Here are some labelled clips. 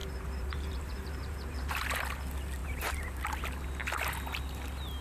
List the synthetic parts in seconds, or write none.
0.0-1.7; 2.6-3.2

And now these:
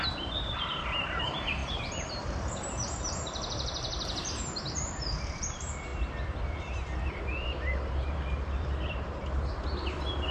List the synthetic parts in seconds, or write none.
0.0-5.9; 7.2-10.3

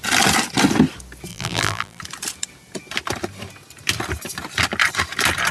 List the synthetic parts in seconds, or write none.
1.3-2.0